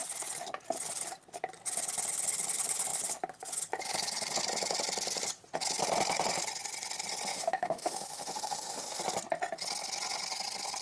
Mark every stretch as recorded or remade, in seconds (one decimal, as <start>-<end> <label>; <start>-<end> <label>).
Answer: 0.0-7.3 recorded; 7.3-9.0 remade; 9.0-10.8 recorded